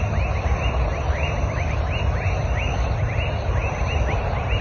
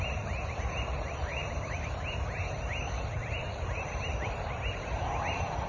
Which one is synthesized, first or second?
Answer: second